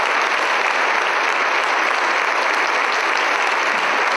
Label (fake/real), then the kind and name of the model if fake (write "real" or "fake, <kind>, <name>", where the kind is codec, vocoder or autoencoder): real